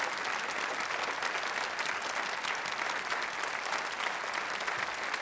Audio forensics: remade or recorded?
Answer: recorded